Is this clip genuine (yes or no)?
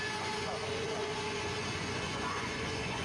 no